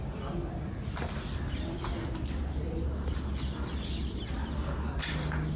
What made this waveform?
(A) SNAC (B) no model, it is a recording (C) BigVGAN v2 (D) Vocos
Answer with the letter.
B